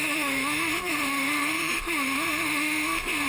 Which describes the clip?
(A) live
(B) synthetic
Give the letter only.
B